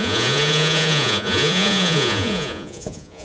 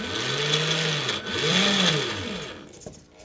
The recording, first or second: second